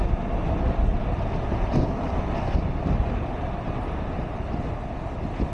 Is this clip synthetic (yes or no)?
no